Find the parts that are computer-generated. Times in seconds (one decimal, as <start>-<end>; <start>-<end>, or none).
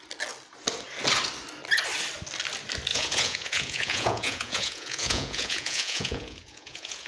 2.9-7.1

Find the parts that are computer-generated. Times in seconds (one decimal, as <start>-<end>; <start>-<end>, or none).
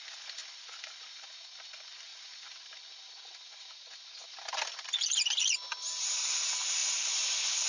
0.4-1.0; 2.1-2.7; 4.2-5.4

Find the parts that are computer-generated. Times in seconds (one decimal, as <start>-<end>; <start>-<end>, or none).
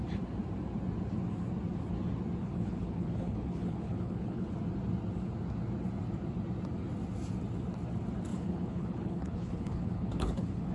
2.4-4.5; 8.3-10.7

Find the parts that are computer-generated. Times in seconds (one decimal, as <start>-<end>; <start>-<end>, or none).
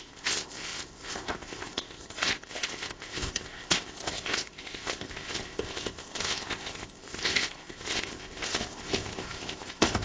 0.0-10.0